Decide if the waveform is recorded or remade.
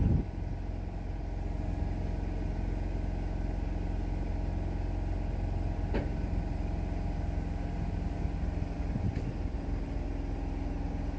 recorded